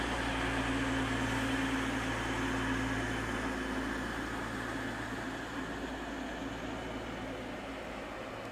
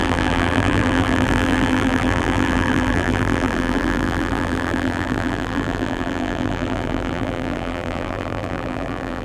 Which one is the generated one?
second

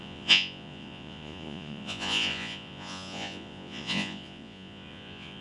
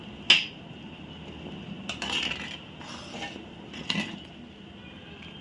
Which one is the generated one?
first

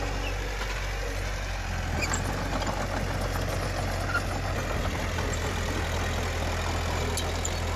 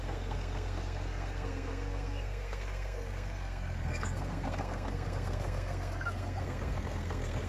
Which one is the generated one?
second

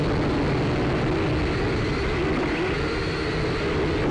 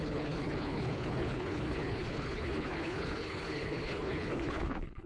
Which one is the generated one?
second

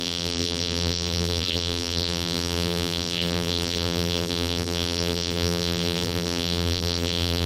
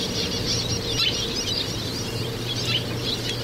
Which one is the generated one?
first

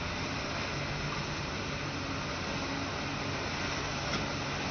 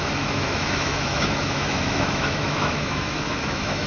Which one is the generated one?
second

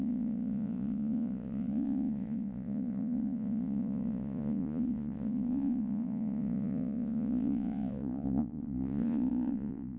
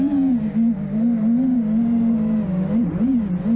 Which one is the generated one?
first